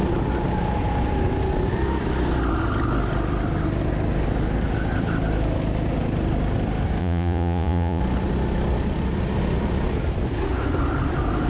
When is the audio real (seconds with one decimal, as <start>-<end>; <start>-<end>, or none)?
0.0-7.0; 8.0-11.5